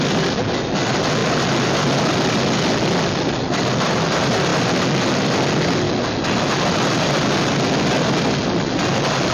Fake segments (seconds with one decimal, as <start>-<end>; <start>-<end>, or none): none